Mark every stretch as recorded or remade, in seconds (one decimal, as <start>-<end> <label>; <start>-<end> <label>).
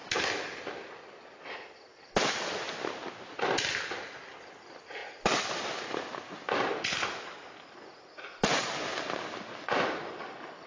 0.0-10.7 recorded